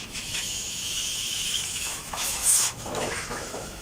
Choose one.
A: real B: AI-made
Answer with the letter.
B